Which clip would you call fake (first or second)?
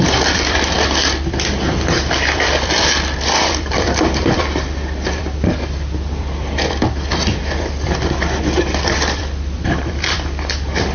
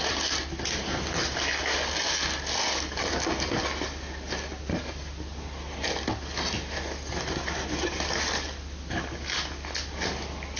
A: first